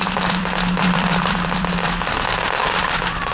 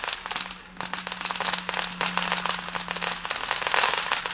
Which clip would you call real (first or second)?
second